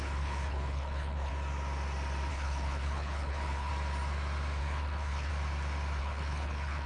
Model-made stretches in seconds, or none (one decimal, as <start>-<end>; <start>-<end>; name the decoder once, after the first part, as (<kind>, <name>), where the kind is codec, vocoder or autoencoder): 0.0-1.3 (codec, HILCodec); 2.3-3.7; 4.6-5.3; 6.0-6.9